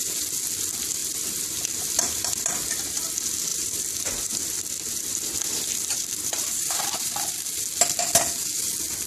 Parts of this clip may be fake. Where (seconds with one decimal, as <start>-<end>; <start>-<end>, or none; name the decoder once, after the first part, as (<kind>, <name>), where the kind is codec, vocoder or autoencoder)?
1.0-3.1 (vocoder, BigVGAN v2); 3.5-7.6